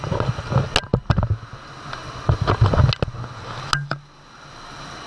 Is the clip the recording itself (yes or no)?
yes